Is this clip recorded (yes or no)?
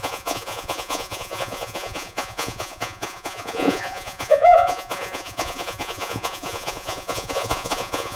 no